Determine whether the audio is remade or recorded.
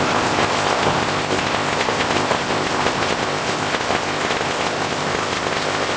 remade